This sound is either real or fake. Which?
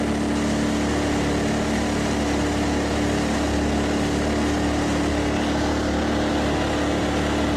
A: real